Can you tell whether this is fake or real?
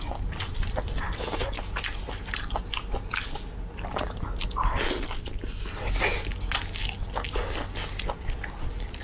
real